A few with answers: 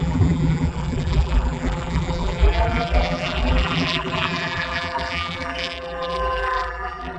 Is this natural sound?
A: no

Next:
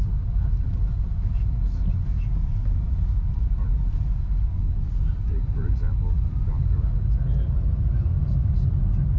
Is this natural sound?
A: yes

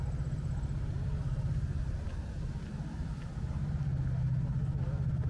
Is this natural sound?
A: yes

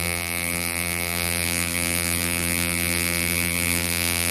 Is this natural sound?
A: no